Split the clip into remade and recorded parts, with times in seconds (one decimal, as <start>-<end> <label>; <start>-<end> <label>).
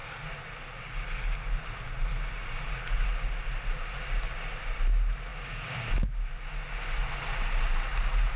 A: 0.0-8.4 recorded